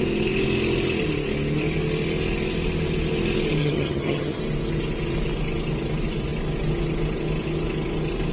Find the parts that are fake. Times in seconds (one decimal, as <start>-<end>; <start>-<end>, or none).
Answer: 3.6-4.4